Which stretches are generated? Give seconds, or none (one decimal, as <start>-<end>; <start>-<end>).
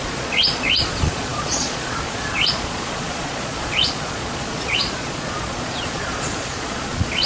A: 0.0-7.3